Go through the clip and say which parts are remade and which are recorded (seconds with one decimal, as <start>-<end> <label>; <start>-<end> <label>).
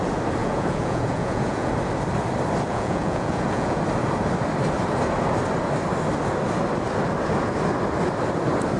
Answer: 0.0-0.4 recorded; 0.4-1.7 remade; 1.7-2.7 recorded; 2.7-3.8 remade; 3.8-8.8 recorded